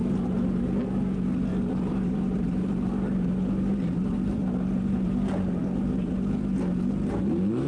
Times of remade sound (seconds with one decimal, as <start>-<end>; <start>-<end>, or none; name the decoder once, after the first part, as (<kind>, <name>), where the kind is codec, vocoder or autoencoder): 0.0-0.8 (vocoder, BigVGAN v2); 1.5-6.1